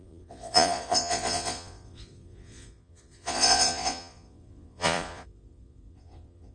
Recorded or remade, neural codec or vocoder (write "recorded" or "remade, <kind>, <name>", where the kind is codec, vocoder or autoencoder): remade, vocoder, Vocos